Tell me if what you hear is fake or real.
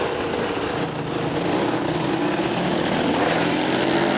real